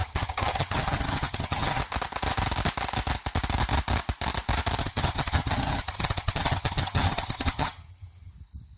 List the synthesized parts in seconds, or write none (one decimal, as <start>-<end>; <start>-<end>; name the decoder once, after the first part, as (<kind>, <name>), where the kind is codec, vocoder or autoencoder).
0.0-1.8 (vocoder, HiFi-GAN); 4.8-8.3